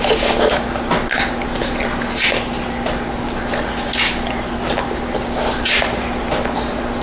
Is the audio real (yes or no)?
yes